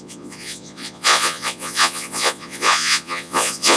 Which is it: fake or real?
fake